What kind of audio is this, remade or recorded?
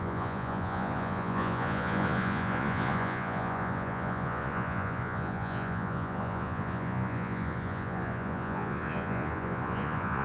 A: remade